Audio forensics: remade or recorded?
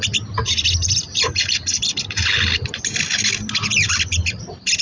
recorded